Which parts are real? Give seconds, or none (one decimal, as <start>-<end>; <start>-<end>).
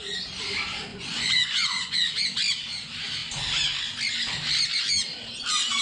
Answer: 0.0-0.9; 2.1-5.8